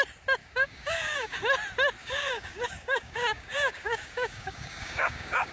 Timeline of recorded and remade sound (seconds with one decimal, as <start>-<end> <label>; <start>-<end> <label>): 0.0-0.4 recorded; 0.4-1.4 remade; 1.4-2.0 recorded; 2.0-5.5 remade

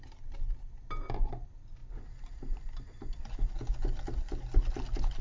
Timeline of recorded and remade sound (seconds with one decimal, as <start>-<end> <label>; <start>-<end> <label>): 0.0-1.8 recorded; 1.8-3.2 remade; 3.2-5.2 recorded

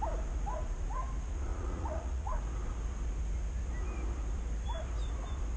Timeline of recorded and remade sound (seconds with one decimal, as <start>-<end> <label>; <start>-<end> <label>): 0.0-1.5 recorded; 1.5-2.4 remade; 2.4-5.6 recorded

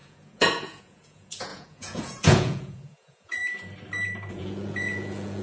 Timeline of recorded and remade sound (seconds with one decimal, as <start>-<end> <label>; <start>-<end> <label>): 0.0-3.4 remade; 3.4-4.3 recorded; 4.3-5.4 remade

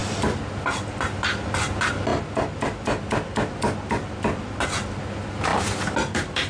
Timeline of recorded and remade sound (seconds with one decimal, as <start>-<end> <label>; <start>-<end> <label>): 0.0-6.5 recorded